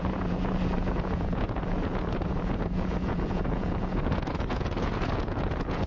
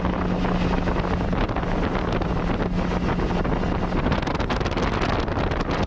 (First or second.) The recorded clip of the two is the second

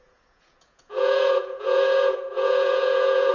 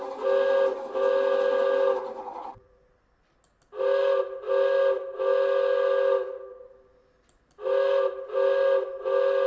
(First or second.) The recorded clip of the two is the second